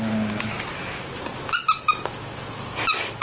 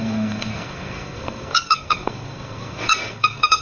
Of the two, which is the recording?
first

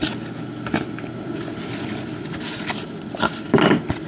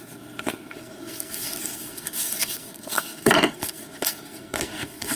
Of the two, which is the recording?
first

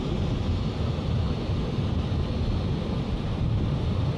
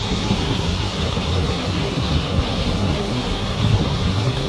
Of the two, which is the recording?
first